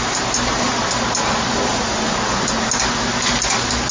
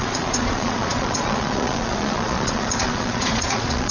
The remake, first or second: second